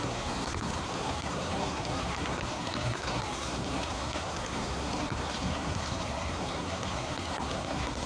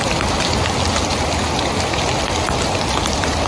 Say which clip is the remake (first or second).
first